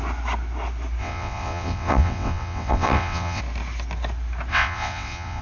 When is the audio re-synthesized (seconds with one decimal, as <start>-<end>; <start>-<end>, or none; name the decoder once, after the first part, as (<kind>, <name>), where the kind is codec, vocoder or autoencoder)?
1.0-3.4 (vocoder, WaveNeXt); 4.5-5.4